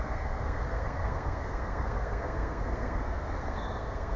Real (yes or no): no